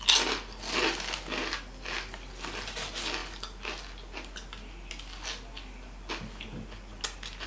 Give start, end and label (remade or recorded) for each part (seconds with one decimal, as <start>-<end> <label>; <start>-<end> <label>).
0.0-7.5 recorded